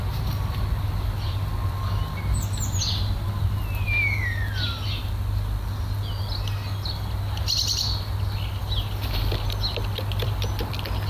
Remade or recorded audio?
recorded